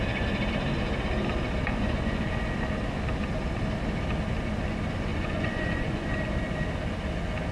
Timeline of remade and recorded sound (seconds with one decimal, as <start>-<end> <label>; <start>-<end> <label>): 0.0-1.6 recorded; 1.6-2.3 remade; 2.3-5.1 recorded; 5.1-6.2 remade; 6.2-7.5 recorded